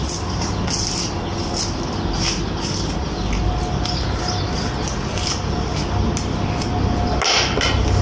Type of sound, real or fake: real